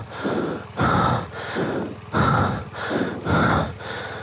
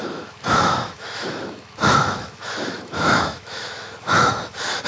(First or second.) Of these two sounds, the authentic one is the first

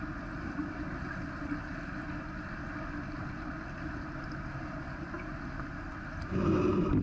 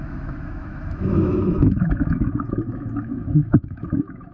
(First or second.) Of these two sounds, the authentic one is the first